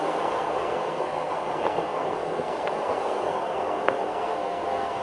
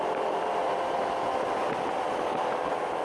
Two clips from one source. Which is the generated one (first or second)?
first